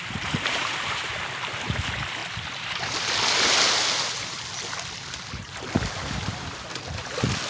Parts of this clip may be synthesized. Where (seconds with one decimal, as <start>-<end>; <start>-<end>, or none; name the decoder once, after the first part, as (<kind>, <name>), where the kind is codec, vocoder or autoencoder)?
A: none